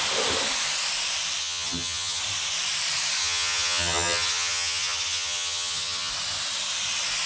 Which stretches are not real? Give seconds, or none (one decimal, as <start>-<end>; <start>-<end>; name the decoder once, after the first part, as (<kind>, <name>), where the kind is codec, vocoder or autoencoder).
1.4-2.2 (vocoder, HiFi-GAN); 3.2-6.1